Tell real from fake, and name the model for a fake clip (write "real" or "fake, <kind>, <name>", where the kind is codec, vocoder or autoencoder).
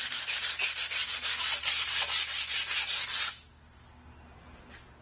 real